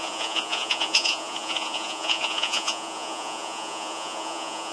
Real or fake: fake